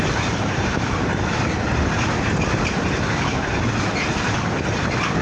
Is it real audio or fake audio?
real